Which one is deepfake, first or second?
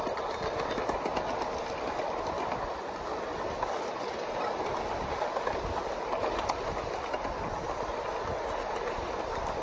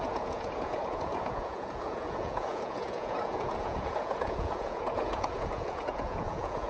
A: second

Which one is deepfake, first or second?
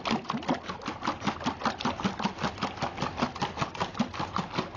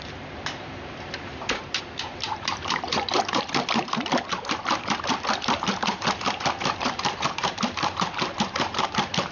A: second